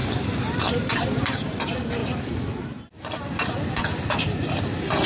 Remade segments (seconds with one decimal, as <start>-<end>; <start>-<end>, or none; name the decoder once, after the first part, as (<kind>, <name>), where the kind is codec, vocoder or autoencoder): 0.6-5.1 (vocoder, BigVGAN v2)